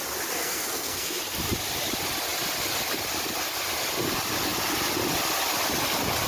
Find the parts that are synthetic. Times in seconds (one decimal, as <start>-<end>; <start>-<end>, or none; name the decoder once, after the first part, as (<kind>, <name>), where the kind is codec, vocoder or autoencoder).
0.4-1.2 (codec, SNAC)